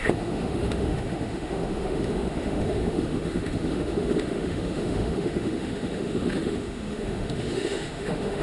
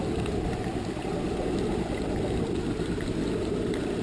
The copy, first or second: first